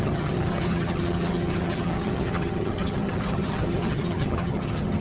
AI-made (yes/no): yes